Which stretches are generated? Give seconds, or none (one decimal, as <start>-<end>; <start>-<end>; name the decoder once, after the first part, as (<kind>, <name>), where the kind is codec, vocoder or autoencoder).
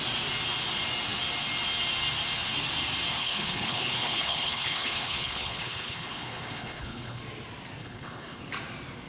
3.2-7.2 (codec, HILCodec); 7.8-8.4